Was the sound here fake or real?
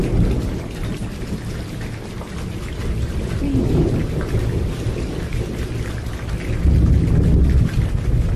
real